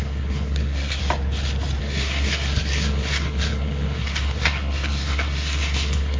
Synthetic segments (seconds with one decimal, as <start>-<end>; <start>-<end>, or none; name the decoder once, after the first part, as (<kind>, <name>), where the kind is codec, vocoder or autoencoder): 0.0-1.0 (codec, SNAC); 1.8-6.2